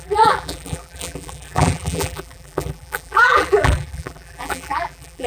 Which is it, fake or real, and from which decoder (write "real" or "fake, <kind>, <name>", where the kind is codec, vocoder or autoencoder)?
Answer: fake, vocoder, BigVGAN v2